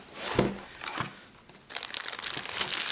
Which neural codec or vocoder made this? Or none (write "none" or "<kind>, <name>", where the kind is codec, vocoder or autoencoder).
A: none